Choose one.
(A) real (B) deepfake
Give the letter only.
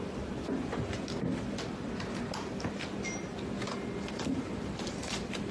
A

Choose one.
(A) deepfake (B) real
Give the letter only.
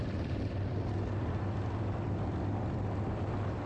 A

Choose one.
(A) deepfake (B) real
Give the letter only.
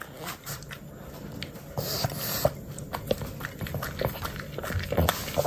B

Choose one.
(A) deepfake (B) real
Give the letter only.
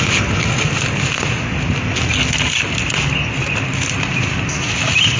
B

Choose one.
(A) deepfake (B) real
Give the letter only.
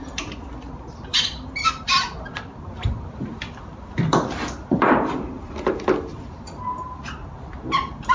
A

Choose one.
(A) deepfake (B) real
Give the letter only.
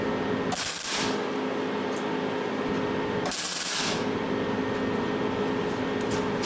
A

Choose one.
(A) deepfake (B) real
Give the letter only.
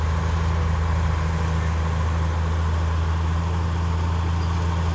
B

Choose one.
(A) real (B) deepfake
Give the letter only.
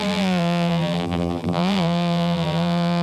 B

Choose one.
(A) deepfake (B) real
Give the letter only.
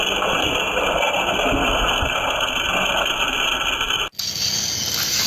B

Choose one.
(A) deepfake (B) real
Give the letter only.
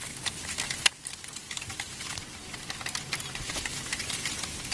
B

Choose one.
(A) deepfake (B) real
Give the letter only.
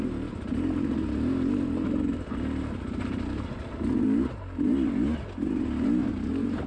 B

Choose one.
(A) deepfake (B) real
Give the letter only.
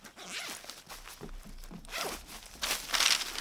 B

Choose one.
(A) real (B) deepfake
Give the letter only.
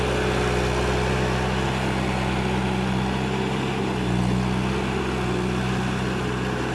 A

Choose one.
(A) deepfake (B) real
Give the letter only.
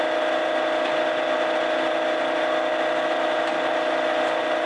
B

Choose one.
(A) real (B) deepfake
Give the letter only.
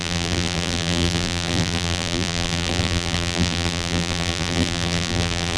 B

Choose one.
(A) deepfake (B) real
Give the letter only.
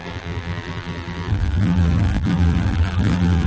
A